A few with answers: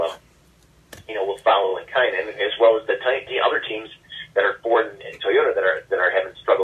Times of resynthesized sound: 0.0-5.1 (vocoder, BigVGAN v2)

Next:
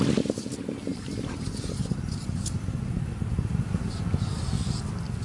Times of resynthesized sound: 0.9-4.0 (vocoder, BigVGAN v2)

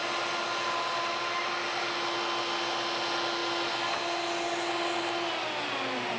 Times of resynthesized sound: none

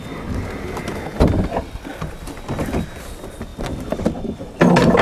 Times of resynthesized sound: none